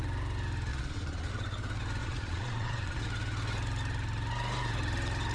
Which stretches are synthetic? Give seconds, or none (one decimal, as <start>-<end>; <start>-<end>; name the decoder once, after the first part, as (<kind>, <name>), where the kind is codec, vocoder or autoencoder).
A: 0.7-1.3 (vocoder, Vocos); 2.0-3.0